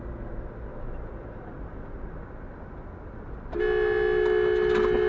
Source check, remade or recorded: recorded